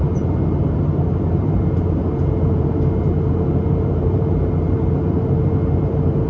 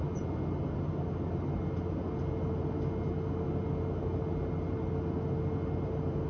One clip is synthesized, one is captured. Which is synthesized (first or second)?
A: first